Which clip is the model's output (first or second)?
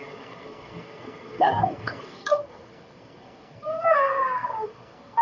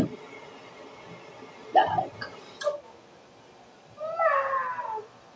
first